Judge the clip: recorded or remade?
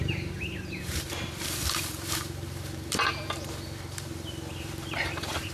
remade